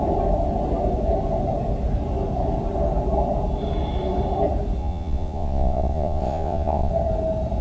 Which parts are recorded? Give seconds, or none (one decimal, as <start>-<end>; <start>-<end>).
0.0-4.8; 6.9-7.6